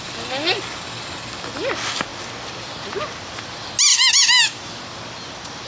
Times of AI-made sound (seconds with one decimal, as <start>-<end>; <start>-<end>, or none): 3.9-4.8

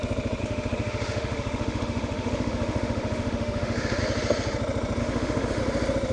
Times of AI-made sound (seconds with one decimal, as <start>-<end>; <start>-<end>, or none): 0.4-4.0; 5.0-5.6

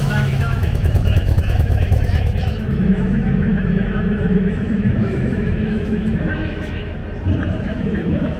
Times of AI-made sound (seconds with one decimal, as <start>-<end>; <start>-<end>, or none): 0.0-7.0; 7.6-8.4